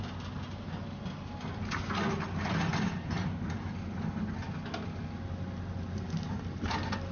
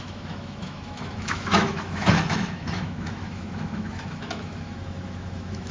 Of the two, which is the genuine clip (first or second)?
first